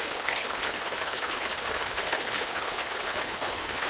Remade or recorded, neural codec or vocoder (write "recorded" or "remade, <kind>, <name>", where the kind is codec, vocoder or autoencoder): remade, codec, HILCodec